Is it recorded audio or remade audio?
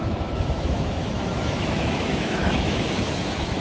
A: remade